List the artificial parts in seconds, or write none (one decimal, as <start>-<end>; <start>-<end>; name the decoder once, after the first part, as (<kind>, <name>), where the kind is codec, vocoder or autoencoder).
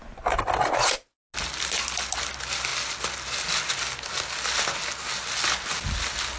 none